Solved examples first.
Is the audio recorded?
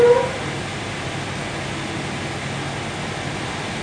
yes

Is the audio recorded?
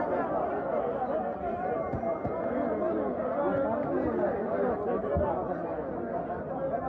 yes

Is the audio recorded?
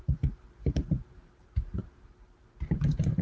no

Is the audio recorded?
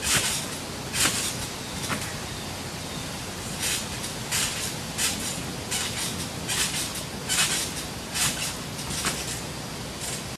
yes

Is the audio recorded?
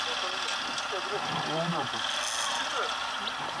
yes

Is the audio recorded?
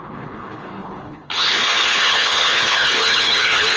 no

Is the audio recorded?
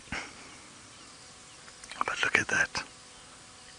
yes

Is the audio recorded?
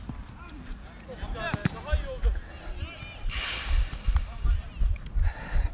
yes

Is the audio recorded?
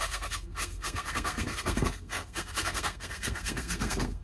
no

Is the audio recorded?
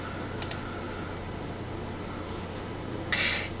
yes